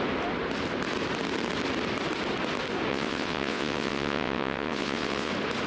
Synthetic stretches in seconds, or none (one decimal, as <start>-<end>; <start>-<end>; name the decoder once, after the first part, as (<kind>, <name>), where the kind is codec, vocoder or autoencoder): 2.9-5.3 (vocoder, WaveNeXt)